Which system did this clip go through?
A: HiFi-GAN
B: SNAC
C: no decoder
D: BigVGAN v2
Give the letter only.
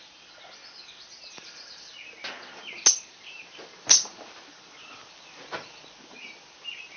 C